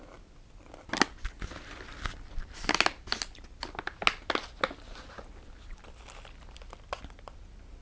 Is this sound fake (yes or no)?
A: no